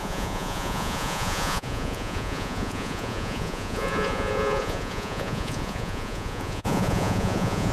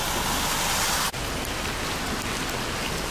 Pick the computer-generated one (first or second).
first